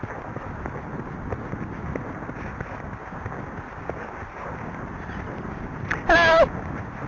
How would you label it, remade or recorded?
recorded